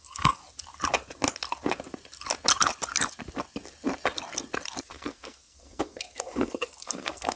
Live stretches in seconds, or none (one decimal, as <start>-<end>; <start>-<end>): 0.4-4.8